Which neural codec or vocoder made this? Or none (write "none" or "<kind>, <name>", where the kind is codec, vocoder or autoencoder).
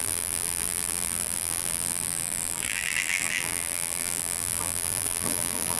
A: vocoder, BigVGAN v2